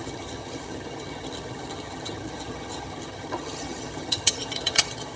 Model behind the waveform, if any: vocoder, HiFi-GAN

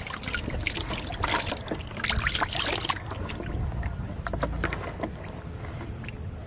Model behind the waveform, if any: none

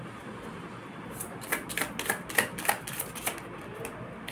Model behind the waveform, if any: none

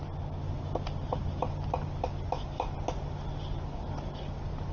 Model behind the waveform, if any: none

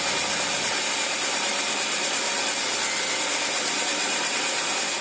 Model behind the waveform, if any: none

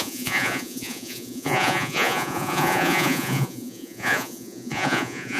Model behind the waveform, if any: vocoder, Vocos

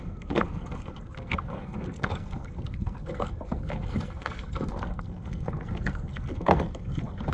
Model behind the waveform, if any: codec, SNAC